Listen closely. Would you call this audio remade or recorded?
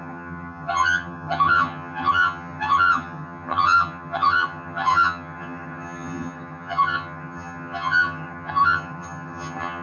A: remade